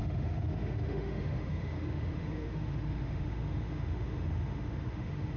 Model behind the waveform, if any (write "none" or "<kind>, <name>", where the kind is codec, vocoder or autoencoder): autoencoder, DAC-VAE